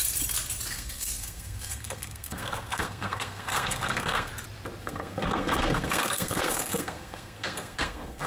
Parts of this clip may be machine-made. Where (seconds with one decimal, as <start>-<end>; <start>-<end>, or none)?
0.7-4.3; 4.8-8.3